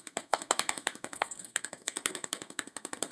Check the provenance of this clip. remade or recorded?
remade